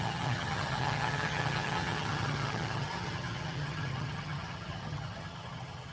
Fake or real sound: fake